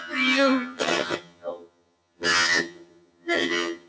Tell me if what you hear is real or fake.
fake